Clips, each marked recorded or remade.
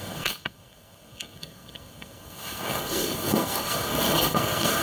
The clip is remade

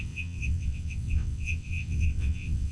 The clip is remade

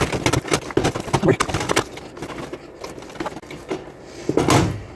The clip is recorded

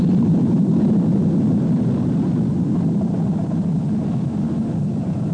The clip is recorded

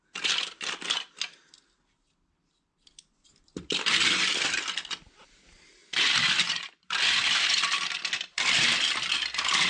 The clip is recorded